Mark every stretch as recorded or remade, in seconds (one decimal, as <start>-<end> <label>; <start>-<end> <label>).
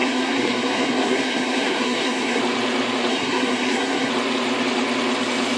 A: 0.0-2.4 remade; 2.4-3.1 recorded; 3.1-4.1 remade; 4.1-5.6 recorded